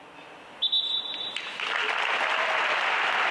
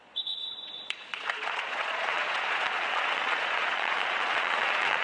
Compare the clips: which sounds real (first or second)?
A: first